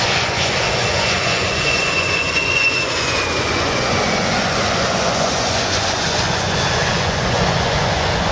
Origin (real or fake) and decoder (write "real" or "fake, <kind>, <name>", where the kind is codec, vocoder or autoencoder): fake, vocoder, Vocos